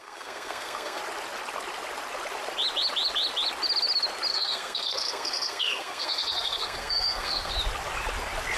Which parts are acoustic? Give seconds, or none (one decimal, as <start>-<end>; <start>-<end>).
1.0-4.3; 7.5-8.6